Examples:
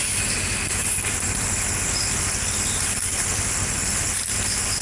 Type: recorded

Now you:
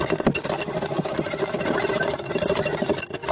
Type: recorded